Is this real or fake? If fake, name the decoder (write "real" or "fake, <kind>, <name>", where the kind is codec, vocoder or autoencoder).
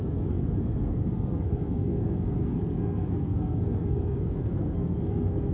fake, codec, SNAC